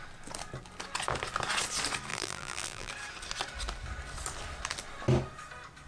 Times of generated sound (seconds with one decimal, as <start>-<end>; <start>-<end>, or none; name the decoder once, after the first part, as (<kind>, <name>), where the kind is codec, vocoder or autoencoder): 2.1-2.9 (vocoder, BigVGAN v2)